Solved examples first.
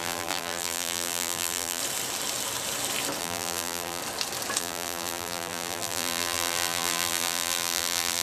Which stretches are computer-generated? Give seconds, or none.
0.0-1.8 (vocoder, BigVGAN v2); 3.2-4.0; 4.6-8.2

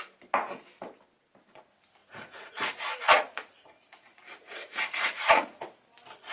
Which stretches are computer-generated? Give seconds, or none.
2.0-5.8 (vocoder, Vocos)